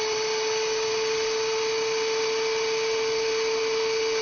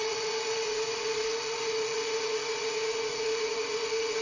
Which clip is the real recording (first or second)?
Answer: first